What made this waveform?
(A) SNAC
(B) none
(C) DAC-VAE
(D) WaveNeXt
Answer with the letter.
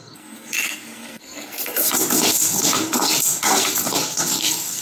A